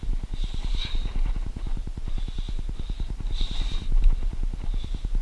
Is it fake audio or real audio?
fake